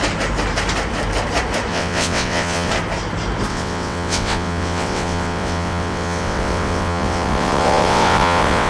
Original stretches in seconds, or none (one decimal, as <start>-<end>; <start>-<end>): 0.0-1.7; 2.7-3.5